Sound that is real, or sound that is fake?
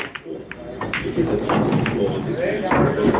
real